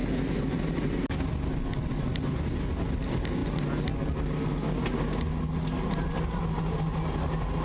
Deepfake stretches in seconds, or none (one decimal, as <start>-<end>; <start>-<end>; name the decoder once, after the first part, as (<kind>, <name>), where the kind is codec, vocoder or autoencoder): none